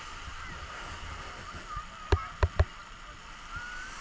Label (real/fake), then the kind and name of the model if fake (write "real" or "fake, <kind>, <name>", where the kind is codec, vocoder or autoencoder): real